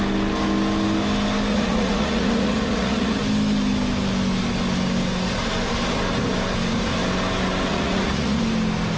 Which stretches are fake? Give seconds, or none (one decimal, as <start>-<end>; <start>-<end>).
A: 1.5-3.2; 7.7-8.4